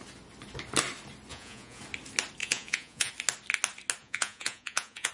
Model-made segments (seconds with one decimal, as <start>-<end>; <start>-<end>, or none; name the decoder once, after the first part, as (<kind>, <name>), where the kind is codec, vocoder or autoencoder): 1.3-1.8 (vocoder, Vocos); 2.4-3.1; 4.0-5.1